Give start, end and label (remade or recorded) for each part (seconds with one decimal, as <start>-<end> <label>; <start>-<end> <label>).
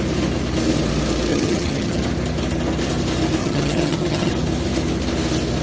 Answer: 0.0-1.3 recorded; 1.3-2.0 remade; 2.0-3.4 recorded; 3.4-4.3 remade; 4.3-5.6 recorded